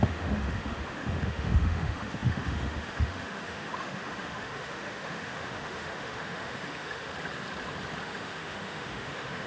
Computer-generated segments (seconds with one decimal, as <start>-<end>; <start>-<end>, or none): 0.0-7.1; 8.0-9.5

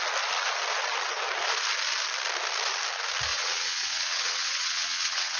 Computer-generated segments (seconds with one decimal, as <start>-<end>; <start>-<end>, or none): 3.3-5.4

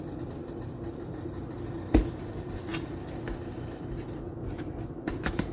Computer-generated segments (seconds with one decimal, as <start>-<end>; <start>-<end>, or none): 0.0-5.5

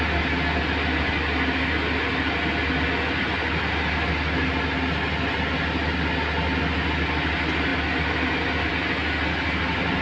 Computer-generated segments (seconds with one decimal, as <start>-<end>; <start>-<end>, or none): none

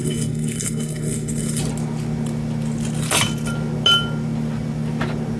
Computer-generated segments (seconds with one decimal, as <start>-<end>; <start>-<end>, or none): 0.0-1.6

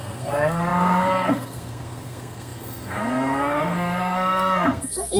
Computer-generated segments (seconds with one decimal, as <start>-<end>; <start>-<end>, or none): 0.0-5.2

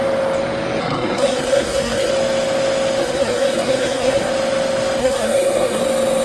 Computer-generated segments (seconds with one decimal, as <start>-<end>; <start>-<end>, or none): 0.8-2.1; 3.0-4.3; 5.0-5.8